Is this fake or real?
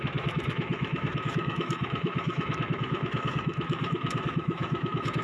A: fake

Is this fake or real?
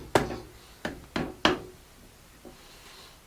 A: real